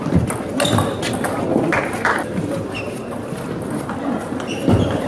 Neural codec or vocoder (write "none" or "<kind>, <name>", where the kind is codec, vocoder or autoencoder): none